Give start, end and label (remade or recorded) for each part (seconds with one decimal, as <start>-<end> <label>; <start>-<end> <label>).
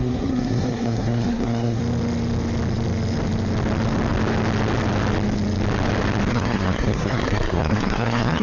0.0-1.8 remade; 1.8-6.3 recorded; 6.3-8.4 remade